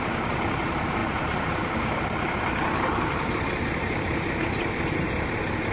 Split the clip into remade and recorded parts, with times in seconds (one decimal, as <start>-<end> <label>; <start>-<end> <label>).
0.0-5.7 remade